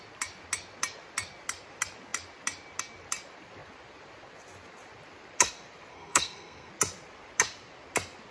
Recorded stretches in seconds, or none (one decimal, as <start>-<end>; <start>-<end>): 0.0-5.9; 6.7-8.3